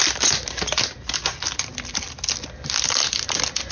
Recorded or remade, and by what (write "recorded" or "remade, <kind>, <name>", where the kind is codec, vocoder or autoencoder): recorded